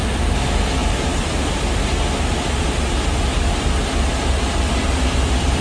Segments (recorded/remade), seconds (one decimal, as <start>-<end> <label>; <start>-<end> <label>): 0.0-5.6 recorded